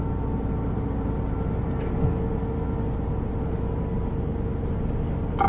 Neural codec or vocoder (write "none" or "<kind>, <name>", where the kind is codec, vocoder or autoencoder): none